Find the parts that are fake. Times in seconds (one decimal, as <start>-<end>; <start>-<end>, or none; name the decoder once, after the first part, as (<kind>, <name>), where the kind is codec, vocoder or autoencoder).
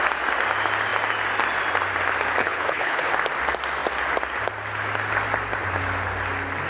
2.4-3.1 (codec, HILCodec)